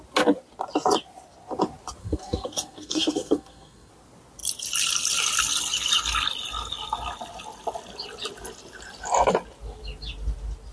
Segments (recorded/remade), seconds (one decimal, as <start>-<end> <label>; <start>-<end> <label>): 0.0-2.0 recorded; 2.0-3.9 remade; 3.9-10.7 recorded